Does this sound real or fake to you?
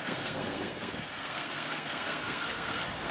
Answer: fake